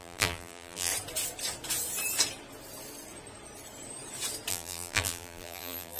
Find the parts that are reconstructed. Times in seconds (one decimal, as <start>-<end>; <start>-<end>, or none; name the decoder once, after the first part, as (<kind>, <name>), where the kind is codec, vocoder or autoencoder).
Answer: 0.0-0.9 (vocoder, BigVGAN v2); 4.5-6.0